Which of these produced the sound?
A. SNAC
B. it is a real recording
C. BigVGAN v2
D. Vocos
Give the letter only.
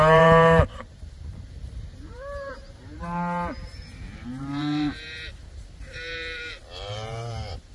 C